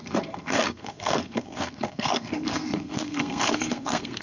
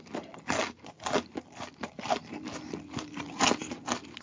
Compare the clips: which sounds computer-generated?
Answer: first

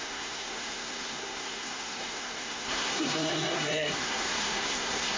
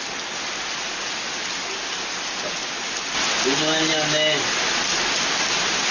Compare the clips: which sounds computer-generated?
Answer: first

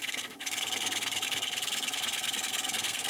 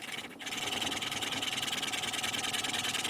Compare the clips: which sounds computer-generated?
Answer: first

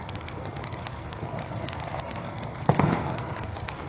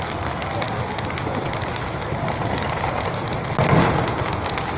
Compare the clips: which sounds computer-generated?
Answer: first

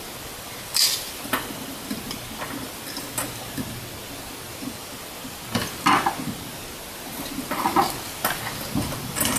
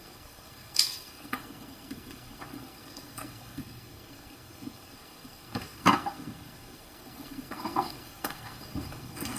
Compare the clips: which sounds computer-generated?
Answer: second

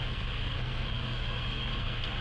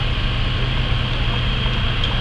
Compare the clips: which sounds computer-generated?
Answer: first